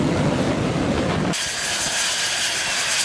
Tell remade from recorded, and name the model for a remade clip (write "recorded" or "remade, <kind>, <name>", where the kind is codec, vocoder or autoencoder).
recorded